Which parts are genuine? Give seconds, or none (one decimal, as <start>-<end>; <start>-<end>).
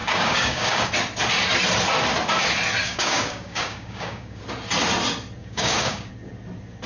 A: 0.9-2.8; 4.4-5.4; 6.1-6.9